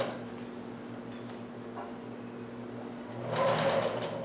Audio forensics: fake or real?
real